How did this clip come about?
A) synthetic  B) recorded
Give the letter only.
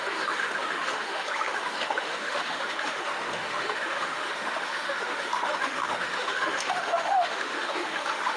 A